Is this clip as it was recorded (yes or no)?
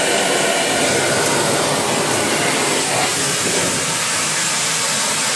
yes